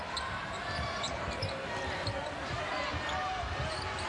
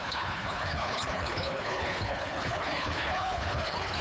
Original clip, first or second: first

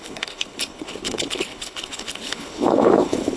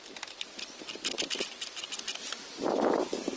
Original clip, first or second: second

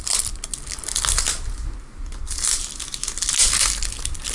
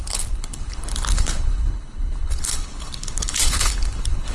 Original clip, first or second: first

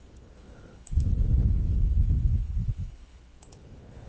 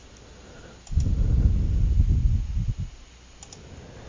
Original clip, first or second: second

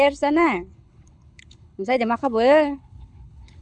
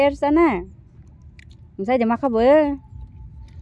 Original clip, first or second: second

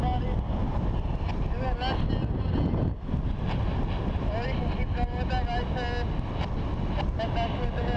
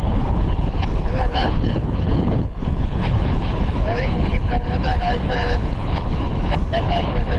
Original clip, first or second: first